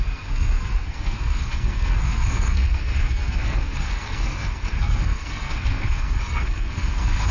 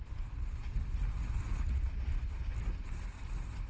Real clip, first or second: second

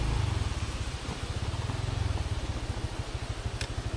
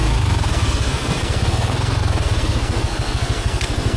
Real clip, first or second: first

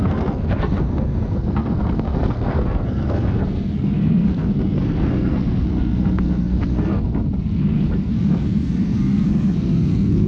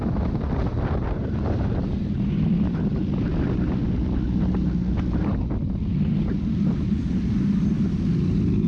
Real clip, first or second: second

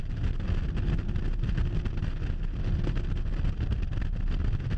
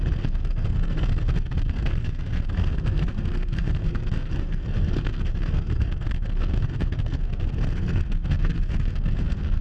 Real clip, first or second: first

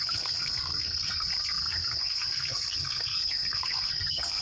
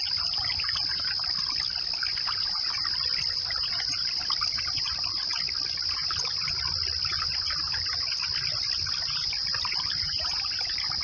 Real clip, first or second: second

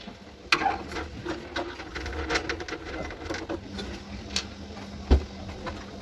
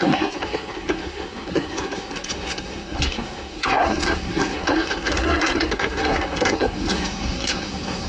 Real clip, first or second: first